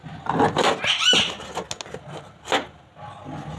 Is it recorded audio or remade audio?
recorded